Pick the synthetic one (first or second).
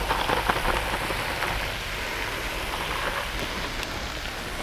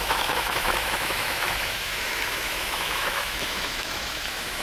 second